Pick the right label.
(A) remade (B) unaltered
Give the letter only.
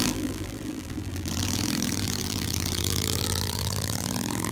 A